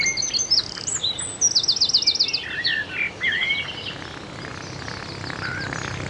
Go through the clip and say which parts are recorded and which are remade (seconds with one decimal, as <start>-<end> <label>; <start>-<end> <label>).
0.0-6.1 recorded